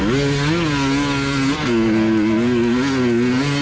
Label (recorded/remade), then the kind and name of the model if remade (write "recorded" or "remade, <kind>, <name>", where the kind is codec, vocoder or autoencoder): recorded